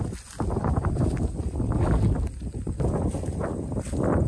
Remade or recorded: recorded